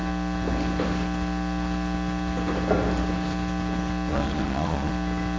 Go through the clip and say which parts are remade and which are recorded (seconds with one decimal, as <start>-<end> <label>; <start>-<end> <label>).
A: 0.0-4.1 recorded; 4.1-4.9 remade; 4.9-5.4 recorded

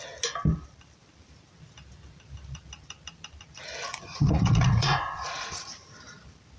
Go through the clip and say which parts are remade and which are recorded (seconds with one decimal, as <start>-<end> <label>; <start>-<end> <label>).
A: 0.0-3.9 recorded; 3.9-5.7 remade; 5.7-6.6 recorded

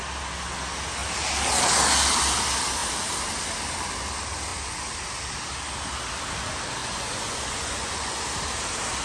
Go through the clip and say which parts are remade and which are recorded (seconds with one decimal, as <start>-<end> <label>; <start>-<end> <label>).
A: 0.0-6.8 recorded; 6.8-8.2 remade; 8.2-9.0 recorded

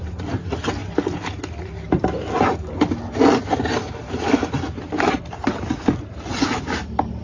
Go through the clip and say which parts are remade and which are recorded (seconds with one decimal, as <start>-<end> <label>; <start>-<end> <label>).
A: 0.0-7.2 recorded

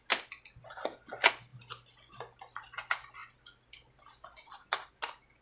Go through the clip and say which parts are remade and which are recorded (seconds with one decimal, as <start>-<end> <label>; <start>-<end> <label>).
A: 0.0-5.4 recorded

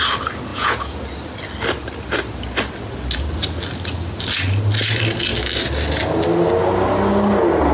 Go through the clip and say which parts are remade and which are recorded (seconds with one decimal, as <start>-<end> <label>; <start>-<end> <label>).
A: 0.0-0.5 recorded; 0.5-1.0 remade; 1.0-7.7 recorded

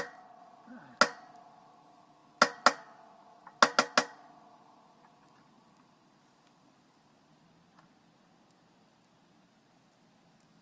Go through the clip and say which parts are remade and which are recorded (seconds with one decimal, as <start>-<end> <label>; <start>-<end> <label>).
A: 0.0-10.6 recorded